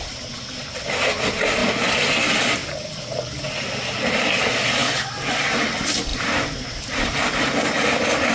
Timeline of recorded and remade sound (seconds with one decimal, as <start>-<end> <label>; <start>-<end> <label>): 0.0-2.6 recorded; 2.6-3.2 remade; 3.2-6.1 recorded; 6.1-7.4 remade; 7.4-8.3 recorded